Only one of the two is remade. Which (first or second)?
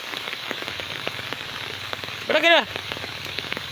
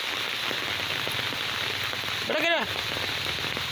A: first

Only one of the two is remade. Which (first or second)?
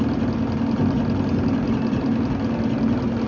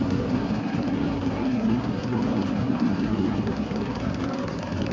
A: second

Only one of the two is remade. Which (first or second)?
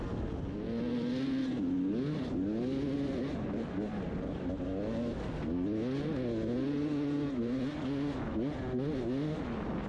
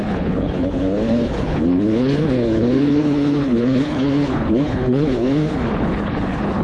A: second